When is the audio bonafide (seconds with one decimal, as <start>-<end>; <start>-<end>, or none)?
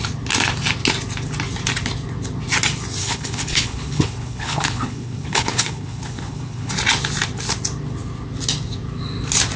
0.0-3.0; 6.7-9.6